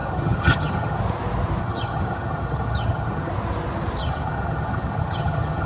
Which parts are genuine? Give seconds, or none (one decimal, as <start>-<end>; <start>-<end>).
1.0-1.6; 3.3-4.0